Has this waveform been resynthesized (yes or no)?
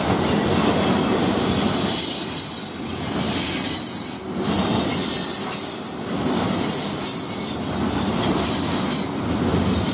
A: no